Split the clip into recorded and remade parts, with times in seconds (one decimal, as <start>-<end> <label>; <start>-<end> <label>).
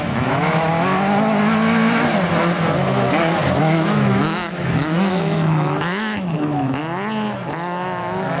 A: 0.0-0.7 remade; 0.7-3.6 recorded; 3.6-6.8 remade; 6.8-7.5 recorded; 7.5-8.4 remade